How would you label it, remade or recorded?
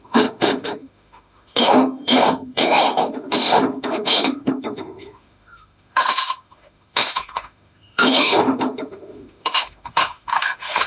remade